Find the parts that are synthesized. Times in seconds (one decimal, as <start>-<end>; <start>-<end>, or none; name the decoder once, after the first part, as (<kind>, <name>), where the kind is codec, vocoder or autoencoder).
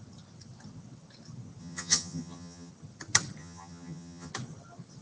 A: 1.6-2.7 (vocoder, HiFi-GAN); 3.4-4.3